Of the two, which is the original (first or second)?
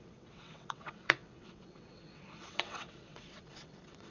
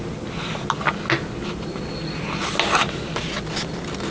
second